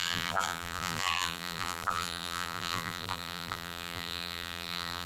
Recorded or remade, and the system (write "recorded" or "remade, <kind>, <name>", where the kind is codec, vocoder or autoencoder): remade, vocoder, BigVGAN v2